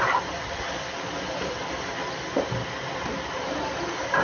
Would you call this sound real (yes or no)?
yes